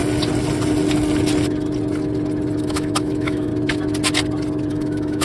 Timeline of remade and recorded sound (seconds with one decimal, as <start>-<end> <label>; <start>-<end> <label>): 0.0-2.6 recorded; 2.6-3.5 remade; 3.5-4.7 recorded; 4.7-5.2 remade

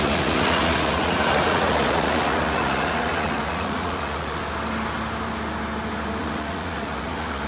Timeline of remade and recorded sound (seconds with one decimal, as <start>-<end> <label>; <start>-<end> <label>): 0.0-4.4 remade; 4.4-6.2 recorded; 6.2-7.5 remade

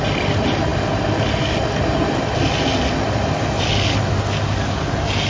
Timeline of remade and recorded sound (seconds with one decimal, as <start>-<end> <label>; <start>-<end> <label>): 0.0-5.3 recorded

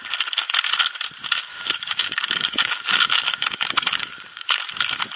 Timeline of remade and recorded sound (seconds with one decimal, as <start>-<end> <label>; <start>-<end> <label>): 0.0-1.5 recorded; 1.5-4.6 remade; 4.6-5.2 recorded

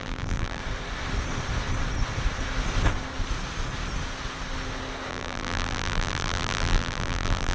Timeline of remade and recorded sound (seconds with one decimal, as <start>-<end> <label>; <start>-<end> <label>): 0.0-0.6 remade; 0.6-5.1 recorded; 5.1-7.5 remade

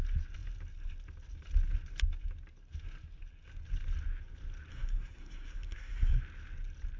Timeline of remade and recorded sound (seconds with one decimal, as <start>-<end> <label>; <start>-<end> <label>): 0.0-4.7 recorded; 4.7-6.2 remade; 6.2-7.0 recorded